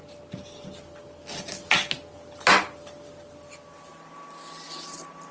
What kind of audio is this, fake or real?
real